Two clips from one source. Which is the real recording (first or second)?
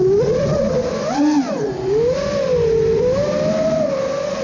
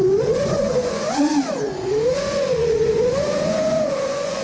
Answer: first